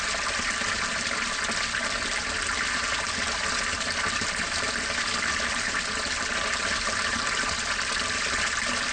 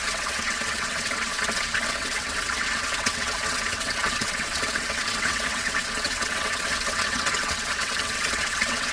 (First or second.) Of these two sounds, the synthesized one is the second